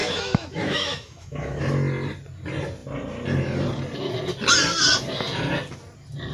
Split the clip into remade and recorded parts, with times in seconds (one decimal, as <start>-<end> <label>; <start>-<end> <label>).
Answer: 0.0-1.6 remade; 1.6-6.3 recorded